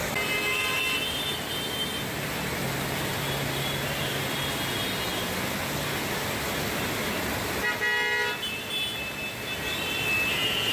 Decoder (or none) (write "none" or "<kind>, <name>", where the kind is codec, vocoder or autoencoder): none